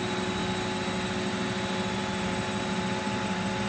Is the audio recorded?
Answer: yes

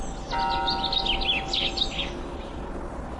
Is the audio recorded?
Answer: yes